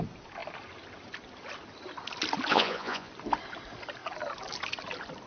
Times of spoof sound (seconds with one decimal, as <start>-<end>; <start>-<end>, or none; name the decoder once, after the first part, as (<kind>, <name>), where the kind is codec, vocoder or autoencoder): 2.5-3.1 (vocoder, Vocos)